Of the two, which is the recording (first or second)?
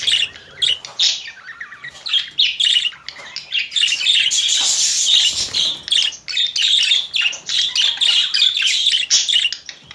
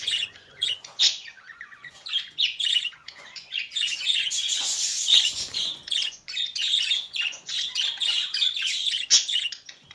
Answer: first